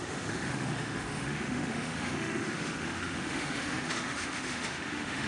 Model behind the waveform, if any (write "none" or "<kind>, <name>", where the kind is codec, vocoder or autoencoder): autoencoder, DAC-VAE